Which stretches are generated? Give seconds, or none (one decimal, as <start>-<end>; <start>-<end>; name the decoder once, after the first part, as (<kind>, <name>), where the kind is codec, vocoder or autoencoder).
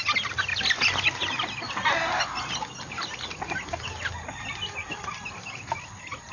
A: none